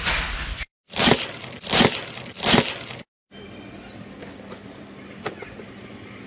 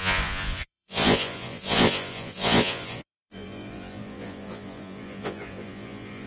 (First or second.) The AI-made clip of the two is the second